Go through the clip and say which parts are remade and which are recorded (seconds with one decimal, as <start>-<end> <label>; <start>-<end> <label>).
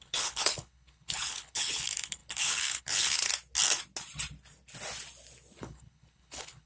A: 0.0-3.3 remade; 3.3-5.6 recorded; 5.6-6.7 remade